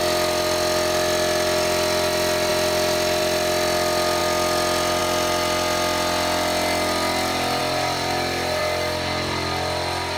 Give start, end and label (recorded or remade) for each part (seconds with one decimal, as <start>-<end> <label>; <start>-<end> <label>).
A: 0.0-10.2 recorded